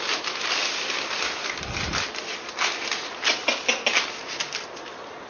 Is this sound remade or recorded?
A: recorded